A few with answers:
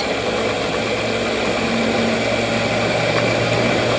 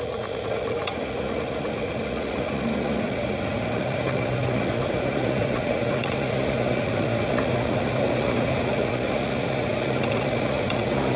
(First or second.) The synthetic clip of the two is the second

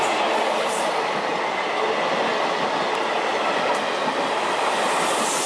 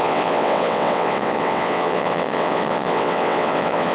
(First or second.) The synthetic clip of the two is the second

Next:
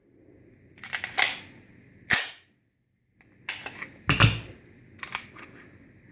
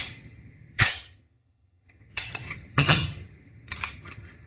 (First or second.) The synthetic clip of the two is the second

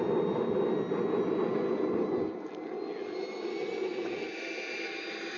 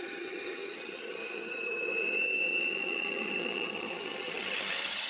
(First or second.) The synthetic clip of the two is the second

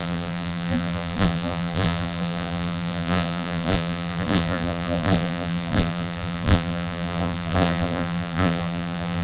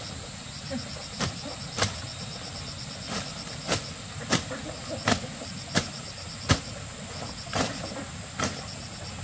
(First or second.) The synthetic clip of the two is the first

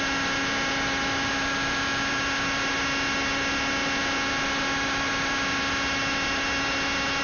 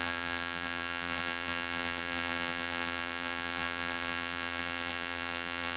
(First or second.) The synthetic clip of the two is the second